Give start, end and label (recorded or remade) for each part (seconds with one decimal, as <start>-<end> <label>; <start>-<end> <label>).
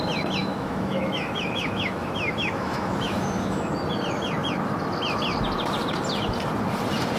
0.0-0.4 recorded; 0.4-3.7 remade; 3.7-7.2 recorded